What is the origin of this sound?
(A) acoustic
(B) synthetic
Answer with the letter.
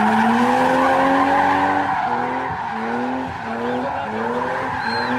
A